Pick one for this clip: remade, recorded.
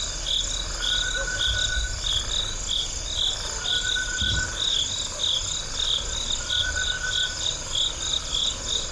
recorded